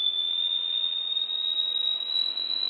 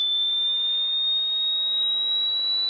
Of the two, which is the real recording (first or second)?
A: second